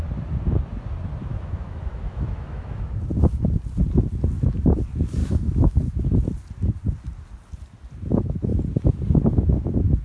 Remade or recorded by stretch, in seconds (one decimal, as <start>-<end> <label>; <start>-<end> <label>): 0.0-1.2 recorded; 1.2-3.0 remade; 3.0-5.2 recorded; 5.2-6.0 remade; 6.0-10.0 recorded